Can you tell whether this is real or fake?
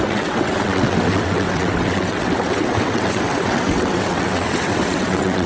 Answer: fake